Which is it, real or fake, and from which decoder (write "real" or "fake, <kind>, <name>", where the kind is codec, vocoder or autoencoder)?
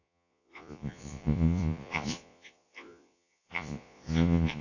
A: fake, vocoder, Vocos